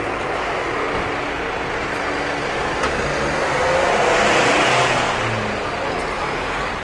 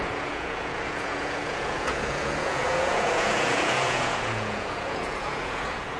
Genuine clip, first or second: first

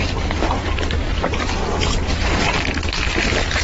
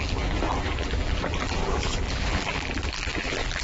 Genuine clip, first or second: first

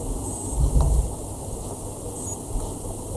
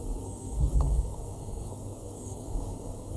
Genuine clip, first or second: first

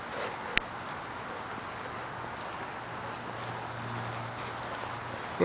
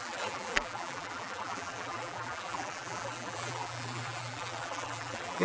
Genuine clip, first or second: first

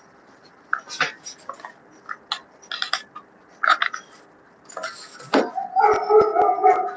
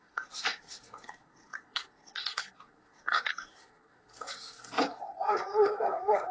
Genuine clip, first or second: first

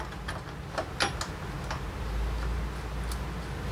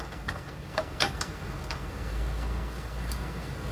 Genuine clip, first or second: first